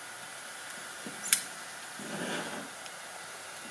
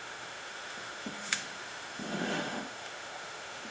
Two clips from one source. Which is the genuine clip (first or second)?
first